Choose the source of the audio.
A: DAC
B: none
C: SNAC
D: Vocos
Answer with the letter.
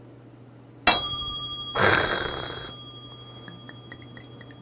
B